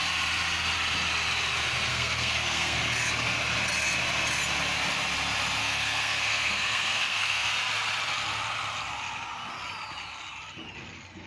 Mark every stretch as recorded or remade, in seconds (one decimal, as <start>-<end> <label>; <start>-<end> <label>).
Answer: 0.0-1.9 recorded; 1.9-2.8 remade; 2.8-5.6 recorded; 5.6-7.5 remade; 7.5-11.3 recorded